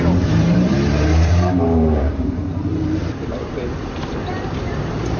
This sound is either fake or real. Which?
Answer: fake